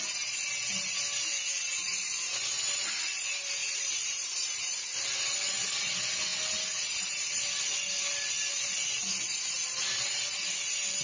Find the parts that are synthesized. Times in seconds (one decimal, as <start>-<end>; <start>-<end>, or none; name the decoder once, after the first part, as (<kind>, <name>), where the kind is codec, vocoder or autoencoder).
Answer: 3.6-4.9 (vocoder, BigVGAN v2)